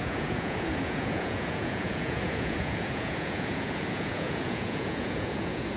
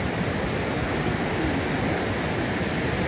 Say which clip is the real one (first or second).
second